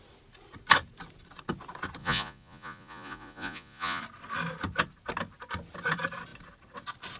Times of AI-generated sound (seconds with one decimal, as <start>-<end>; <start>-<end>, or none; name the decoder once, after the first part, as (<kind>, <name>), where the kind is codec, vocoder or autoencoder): 2.0-4.0 (vocoder, Vocos)